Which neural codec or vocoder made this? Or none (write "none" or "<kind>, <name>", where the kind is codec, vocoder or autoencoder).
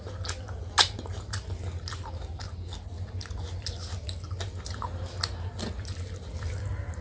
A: none